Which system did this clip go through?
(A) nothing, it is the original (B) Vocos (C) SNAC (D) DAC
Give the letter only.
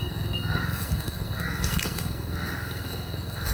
C